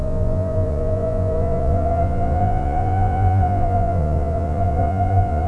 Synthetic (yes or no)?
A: yes